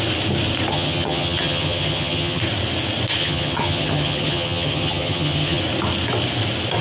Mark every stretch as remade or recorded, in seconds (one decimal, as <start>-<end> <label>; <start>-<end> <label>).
0.0-0.7 recorded; 0.7-2.4 remade; 2.4-3.2 recorded; 3.2-5.6 remade; 5.6-6.8 recorded